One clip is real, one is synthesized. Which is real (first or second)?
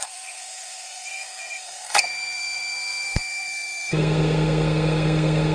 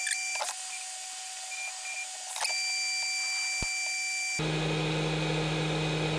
second